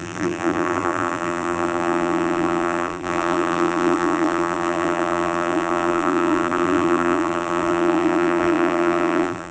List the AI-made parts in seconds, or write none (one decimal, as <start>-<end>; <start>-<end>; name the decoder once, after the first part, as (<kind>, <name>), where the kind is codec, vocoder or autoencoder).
0.0-9.5 (vocoder, BigVGAN v2)